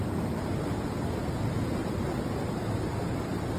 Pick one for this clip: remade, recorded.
recorded